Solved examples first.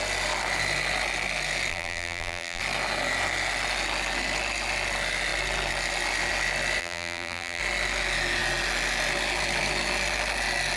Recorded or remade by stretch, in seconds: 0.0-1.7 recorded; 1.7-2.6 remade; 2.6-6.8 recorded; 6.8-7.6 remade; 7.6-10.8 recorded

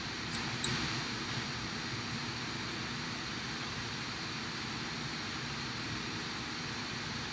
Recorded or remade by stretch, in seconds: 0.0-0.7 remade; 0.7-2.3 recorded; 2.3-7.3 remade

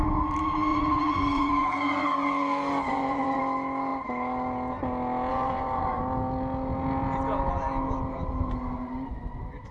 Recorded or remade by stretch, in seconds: 0.0-0.7 recorded; 0.7-3.4 remade; 3.4-5.3 recorded; 5.3-6.0 remade; 6.0-9.7 recorded